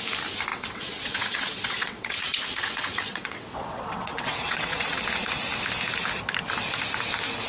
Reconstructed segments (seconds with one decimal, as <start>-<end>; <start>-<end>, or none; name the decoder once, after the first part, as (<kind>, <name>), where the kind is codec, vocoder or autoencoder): 0.5-5.0 (vocoder, WaveNeXt)